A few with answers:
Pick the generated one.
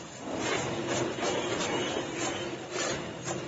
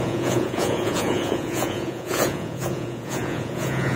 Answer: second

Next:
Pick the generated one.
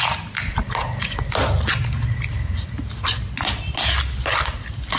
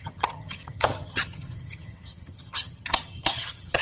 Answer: second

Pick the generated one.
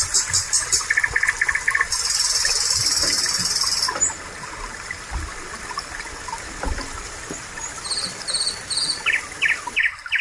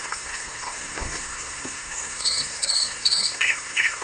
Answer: second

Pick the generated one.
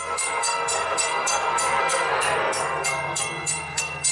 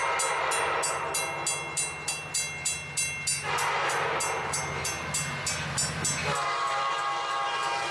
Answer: first